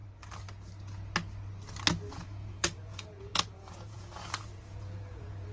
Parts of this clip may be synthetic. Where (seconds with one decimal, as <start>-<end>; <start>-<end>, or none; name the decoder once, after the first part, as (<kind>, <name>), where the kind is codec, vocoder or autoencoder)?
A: 2.1-5.5 (vocoder, Vocos)

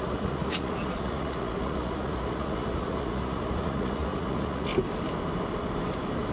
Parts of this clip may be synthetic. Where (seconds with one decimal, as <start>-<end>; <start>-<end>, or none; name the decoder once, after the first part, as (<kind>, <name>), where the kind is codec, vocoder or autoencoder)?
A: 0.0-4.7 (vocoder, Vocos)

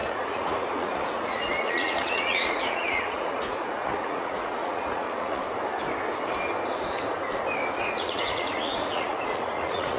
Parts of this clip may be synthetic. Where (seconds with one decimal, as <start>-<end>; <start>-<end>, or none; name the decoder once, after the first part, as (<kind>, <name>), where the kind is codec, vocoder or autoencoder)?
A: 0.0-5.4 (vocoder, Vocos); 7.8-10.0

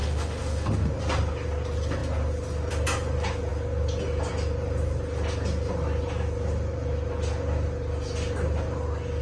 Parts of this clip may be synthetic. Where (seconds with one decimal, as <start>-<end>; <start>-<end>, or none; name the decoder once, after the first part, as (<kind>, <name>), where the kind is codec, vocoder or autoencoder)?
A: 0.0-0.9 (autoencoder, DAC-VAE)

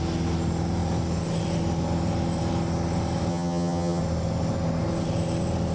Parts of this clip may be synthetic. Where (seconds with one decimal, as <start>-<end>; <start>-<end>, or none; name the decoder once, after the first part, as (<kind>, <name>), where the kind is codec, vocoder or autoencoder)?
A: 3.3-4.0 (vocoder, HiFi-GAN)